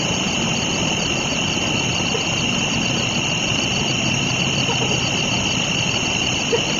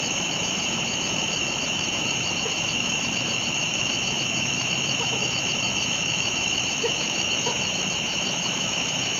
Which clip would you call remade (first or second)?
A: second